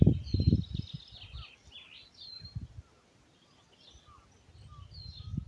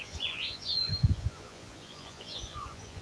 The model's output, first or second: second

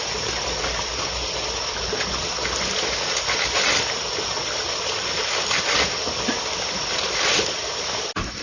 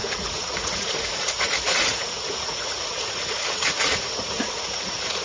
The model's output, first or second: second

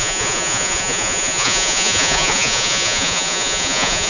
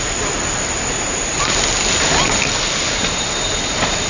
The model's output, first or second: first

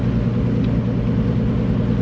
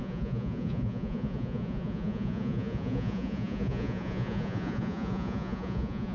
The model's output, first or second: second